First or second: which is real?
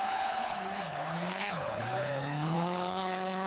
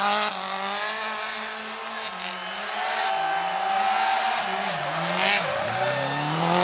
second